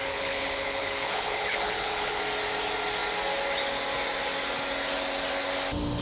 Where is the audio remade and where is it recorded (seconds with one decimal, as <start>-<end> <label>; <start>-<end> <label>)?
0.0-2.2 remade; 2.2-6.0 recorded